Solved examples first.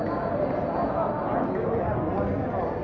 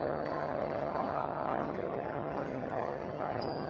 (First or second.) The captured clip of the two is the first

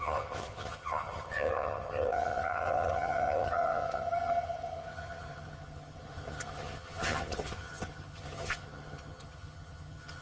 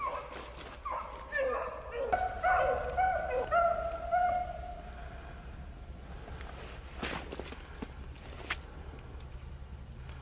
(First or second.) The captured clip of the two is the second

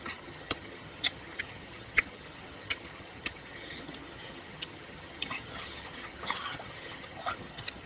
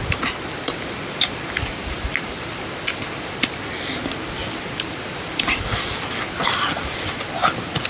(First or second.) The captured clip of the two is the second